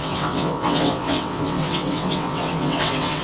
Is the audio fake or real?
fake